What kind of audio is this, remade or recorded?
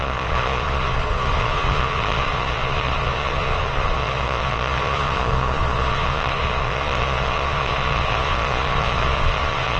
remade